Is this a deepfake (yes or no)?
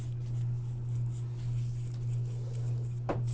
no